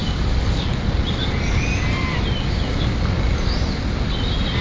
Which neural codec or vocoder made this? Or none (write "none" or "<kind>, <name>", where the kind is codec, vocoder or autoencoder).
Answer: none